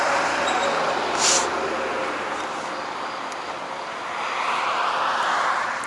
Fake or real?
real